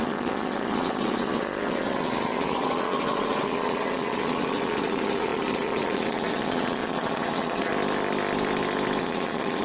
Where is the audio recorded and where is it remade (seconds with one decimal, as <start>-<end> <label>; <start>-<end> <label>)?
0.0-7.7 remade; 7.7-9.0 recorded; 9.0-9.6 remade